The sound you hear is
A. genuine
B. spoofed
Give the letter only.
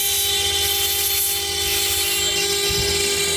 A